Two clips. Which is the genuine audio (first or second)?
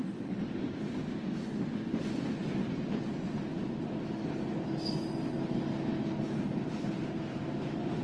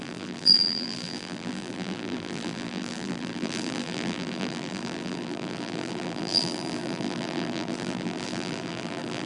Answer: first